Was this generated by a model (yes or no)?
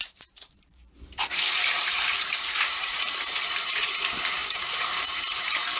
yes